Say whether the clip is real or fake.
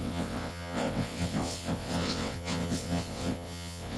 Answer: fake